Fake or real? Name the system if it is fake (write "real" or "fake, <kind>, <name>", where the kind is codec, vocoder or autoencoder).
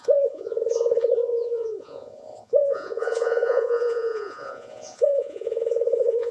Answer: fake, vocoder, Vocos